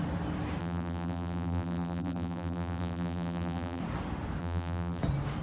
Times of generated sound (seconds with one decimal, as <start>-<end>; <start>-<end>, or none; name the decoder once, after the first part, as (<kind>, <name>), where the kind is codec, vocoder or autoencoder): 0.6-3.8 (vocoder, BigVGAN v2); 4.4-5.0